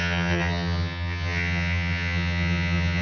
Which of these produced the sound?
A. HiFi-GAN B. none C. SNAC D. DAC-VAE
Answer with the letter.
A